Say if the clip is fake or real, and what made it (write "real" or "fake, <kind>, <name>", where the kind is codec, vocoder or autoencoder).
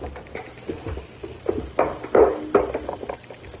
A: real